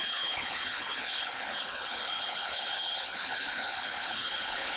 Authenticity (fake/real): fake